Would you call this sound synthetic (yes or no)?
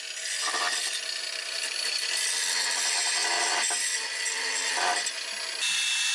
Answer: no